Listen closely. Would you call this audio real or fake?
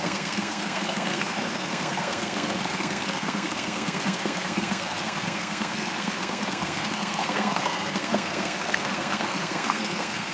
fake